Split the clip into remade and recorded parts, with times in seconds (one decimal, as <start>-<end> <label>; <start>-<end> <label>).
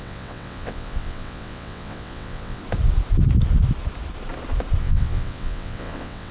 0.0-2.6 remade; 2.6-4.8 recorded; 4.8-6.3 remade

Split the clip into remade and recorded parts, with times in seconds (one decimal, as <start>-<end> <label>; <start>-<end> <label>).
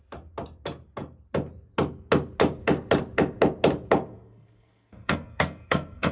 0.0-4.1 recorded; 4.1-6.1 remade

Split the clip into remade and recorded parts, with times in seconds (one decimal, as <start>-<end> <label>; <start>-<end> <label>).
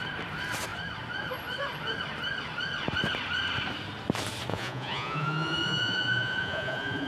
0.0-4.5 recorded; 4.5-7.1 remade